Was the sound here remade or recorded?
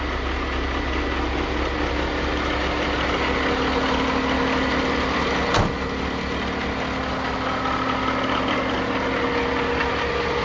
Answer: recorded